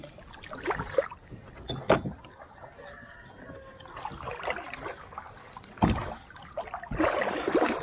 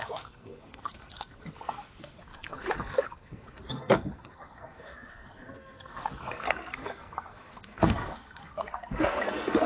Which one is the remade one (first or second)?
second